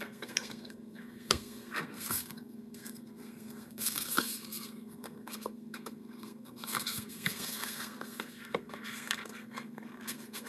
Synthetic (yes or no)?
yes